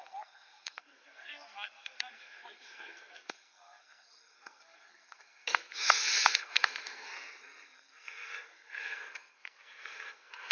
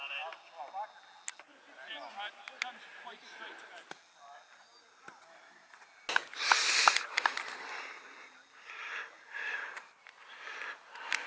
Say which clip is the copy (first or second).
first